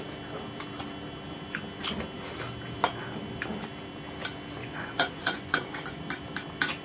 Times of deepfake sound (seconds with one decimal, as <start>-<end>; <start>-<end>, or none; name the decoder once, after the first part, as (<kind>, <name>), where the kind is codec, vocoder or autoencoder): 4.6-6.0 (vocoder, Vocos)